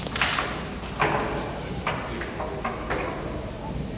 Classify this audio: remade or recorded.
recorded